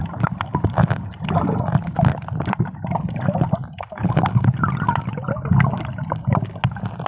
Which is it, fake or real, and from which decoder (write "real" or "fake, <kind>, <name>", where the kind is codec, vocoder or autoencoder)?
real